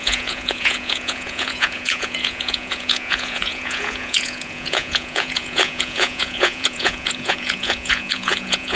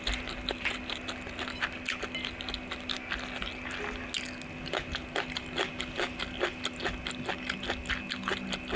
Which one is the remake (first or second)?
first